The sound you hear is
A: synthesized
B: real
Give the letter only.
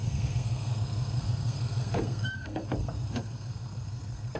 A